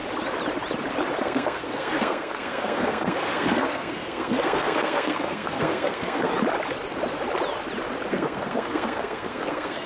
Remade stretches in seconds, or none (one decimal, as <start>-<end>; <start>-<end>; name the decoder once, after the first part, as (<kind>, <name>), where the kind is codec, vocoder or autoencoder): 1.2-6.3 (codec, SNAC); 8.1-9.9